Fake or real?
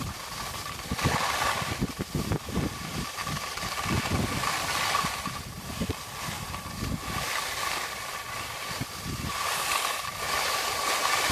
real